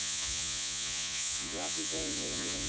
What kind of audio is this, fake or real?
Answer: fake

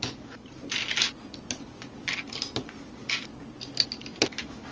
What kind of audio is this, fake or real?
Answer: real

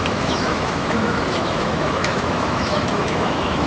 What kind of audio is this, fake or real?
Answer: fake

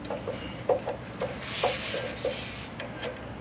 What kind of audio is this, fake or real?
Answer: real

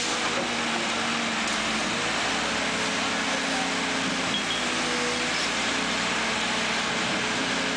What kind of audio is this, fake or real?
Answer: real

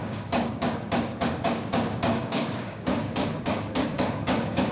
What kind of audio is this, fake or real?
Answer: fake